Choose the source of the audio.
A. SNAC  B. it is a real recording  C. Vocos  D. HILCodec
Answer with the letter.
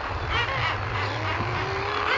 B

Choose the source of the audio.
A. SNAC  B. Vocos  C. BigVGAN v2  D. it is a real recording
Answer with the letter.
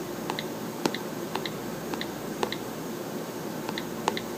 D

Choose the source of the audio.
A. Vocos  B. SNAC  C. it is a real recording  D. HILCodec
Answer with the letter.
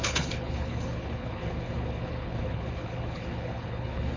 D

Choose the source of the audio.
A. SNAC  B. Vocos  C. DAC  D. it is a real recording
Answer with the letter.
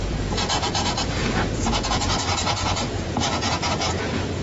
B